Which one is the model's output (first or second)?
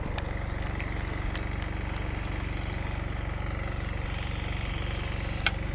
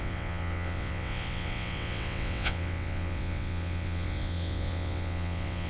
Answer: second